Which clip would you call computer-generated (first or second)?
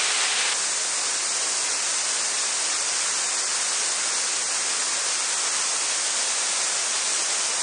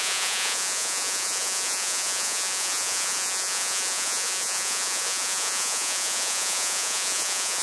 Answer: second